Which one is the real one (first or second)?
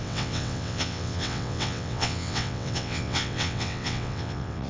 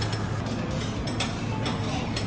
second